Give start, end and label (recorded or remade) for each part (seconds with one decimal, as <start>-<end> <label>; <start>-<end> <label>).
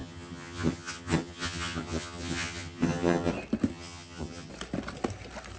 0.0-3.3 remade; 3.3-3.7 recorded; 3.7-4.5 remade; 4.5-5.6 recorded